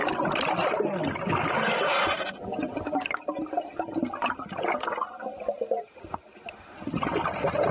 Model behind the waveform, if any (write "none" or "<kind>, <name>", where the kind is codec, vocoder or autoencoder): none